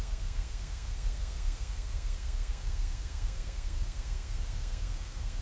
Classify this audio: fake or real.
fake